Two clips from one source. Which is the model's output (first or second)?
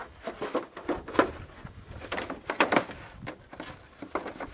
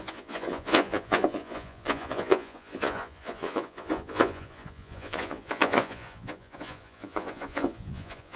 second